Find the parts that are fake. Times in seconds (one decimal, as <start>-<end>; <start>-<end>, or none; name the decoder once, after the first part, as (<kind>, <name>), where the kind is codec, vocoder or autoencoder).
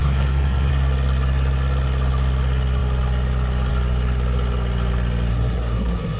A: 0.0-0.7 (codec, SNAC); 5.3-6.2